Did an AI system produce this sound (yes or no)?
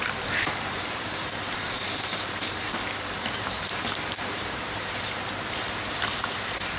yes